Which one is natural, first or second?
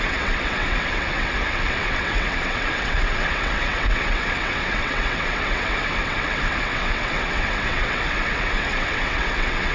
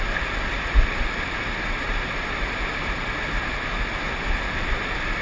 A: second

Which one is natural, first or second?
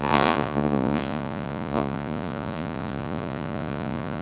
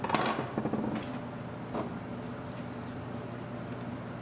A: second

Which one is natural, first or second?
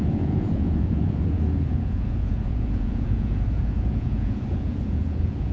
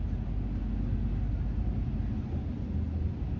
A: second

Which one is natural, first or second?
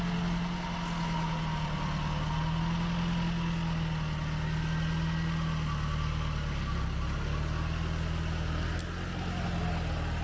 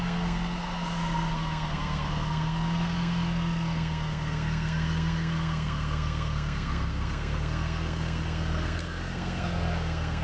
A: first